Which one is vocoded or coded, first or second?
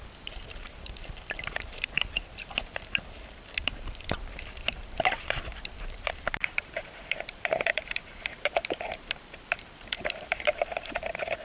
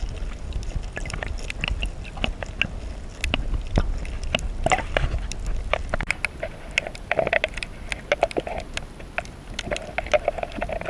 first